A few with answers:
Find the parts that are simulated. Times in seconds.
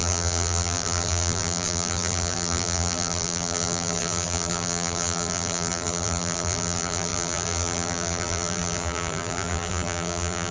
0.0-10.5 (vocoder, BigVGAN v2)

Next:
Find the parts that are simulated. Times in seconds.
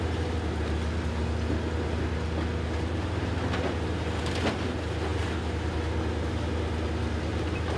none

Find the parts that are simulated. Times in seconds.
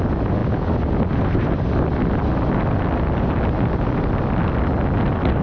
0.0-0.4 (vocoder, BigVGAN v2); 0.9-5.4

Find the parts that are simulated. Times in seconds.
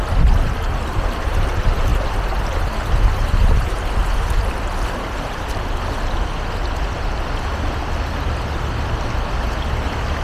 none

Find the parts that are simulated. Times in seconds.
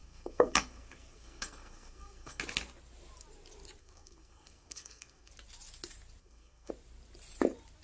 0.0-2.4 (codec, SNAC); 3.8-5.3; 6.2-6.7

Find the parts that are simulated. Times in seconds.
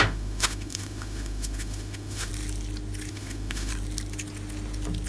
0.0-2.3 (autoencoder, DAC-VAE); 3.1-3.7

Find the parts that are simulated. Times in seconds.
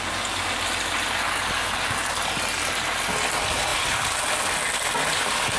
none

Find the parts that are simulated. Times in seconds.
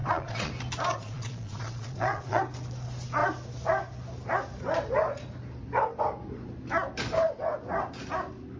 0.0-0.5 (vocoder, Vocos); 0.9-2.4